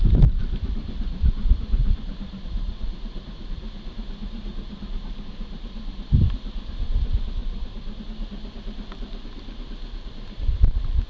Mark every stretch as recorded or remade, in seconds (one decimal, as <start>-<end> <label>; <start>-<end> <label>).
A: 0.0-0.4 recorded; 0.4-3.4 remade; 3.4-4.5 recorded; 4.5-6.1 remade; 6.1-7.4 recorded; 7.4-8.0 remade; 8.0-11.1 recorded